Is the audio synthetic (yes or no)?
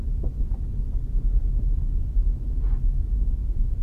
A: no